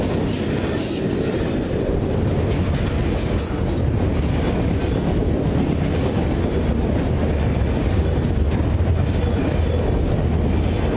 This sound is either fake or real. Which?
real